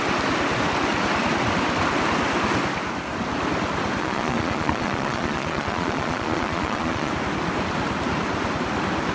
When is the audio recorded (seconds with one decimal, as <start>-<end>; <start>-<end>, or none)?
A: 0.0-4.0; 7.1-9.1